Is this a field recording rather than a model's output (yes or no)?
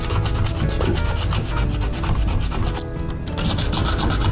yes